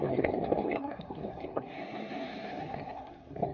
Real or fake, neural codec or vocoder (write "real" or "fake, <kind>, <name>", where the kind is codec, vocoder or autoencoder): fake, codec, SNAC